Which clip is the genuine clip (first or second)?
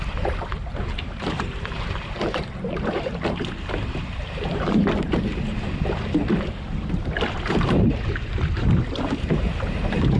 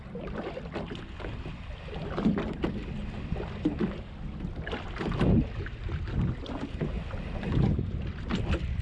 second